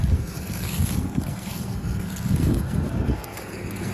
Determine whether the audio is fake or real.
fake